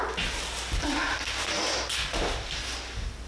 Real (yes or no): yes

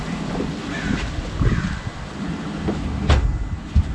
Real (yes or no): yes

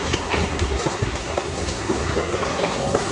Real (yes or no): no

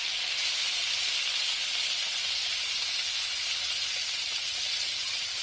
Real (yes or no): yes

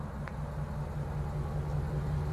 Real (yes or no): yes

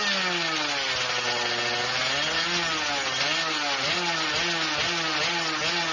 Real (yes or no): yes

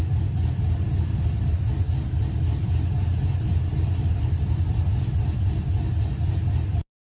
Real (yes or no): no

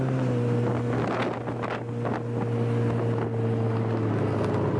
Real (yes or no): yes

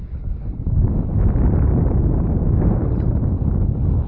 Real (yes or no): yes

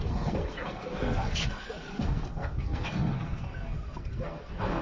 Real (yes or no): no